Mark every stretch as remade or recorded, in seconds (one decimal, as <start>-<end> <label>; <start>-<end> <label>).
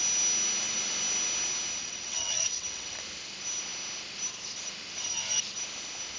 0.0-1.8 recorded; 1.8-3.0 remade; 3.0-6.2 recorded